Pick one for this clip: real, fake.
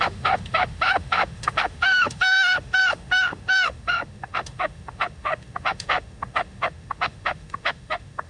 fake